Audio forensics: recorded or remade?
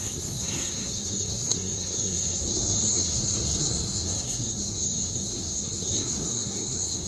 remade